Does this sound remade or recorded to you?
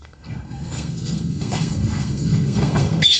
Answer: remade